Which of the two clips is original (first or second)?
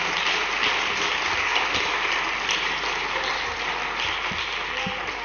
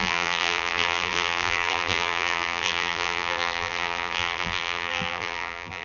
first